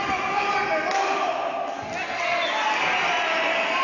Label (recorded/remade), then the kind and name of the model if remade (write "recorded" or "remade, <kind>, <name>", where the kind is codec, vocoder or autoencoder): recorded